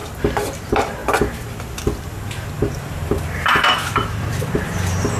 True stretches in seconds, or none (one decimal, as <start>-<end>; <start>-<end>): 0.0-0.6; 1.0-2.5

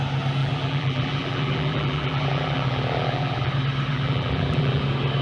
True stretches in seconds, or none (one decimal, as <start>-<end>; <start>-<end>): 0.0-0.4; 3.5-3.9; 4.8-5.2

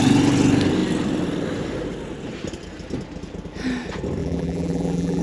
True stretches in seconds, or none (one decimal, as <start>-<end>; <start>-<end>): 0.0-4.2

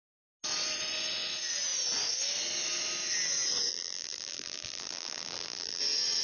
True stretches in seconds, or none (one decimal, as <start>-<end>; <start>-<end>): 0.0-3.7; 5.8-6.2